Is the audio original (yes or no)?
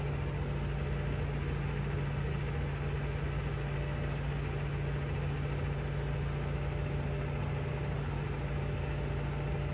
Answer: yes